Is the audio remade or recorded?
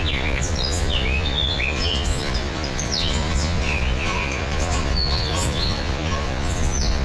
remade